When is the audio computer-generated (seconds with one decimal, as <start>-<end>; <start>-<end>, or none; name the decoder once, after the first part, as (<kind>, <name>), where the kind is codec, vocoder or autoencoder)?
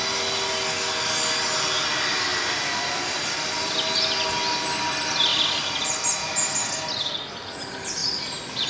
2.3-3.7 (vocoder, BigVGAN v2); 5.3-5.9; 8.0-8.7